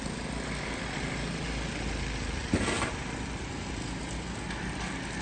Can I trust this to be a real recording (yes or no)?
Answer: yes